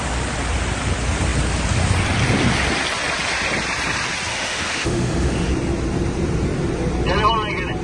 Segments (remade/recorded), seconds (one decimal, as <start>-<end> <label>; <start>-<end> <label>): 0.0-4.3 recorded; 4.3-5.5 remade; 5.5-7.8 recorded